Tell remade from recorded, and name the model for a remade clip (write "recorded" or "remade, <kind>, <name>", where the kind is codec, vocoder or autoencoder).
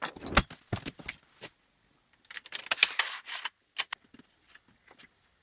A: recorded